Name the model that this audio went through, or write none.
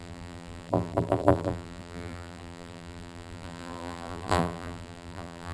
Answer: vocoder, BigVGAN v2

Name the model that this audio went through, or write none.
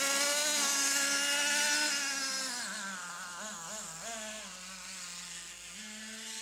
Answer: none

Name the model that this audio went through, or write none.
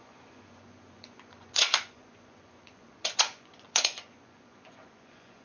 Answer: vocoder, Vocos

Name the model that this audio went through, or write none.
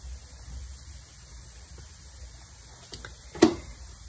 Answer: none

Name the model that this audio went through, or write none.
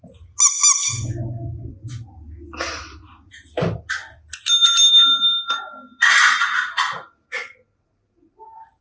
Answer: none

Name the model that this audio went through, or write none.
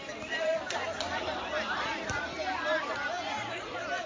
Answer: none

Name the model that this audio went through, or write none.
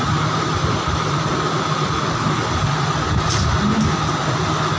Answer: none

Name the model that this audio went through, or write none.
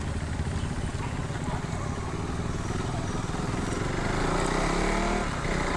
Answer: none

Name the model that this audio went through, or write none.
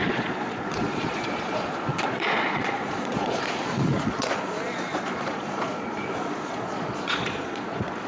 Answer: vocoder, Vocos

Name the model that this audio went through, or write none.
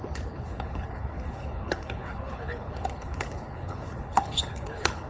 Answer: codec, HILCodec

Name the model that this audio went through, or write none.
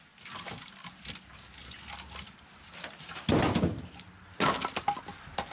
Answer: none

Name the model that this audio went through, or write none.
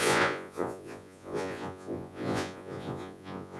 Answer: vocoder, Vocos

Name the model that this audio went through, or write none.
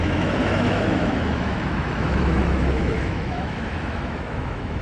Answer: autoencoder, DAC-VAE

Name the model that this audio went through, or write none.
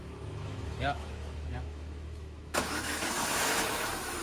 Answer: autoencoder, DAC-VAE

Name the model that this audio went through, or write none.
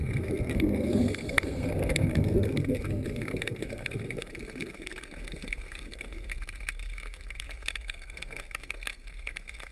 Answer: codec, SNAC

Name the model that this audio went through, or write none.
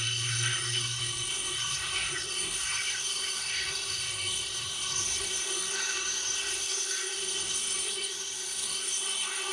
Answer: codec, SNAC